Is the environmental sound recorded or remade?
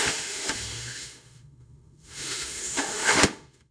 remade